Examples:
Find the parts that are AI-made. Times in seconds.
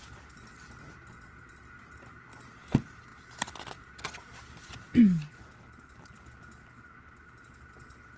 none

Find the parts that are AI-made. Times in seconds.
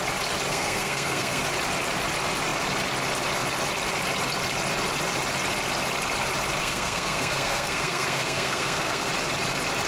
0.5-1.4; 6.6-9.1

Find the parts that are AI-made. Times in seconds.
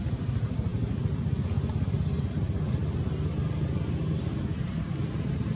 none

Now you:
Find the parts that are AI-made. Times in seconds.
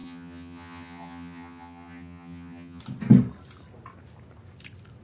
0.0-2.8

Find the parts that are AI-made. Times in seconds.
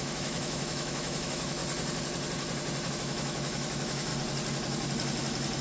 0.0-1.6; 2.9-4.1